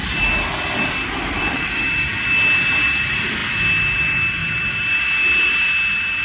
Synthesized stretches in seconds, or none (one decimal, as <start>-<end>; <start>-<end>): 0.0-1.8; 4.4-5.7